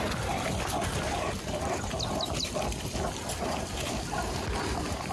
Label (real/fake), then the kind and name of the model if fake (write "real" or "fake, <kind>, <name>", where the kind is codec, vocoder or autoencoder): real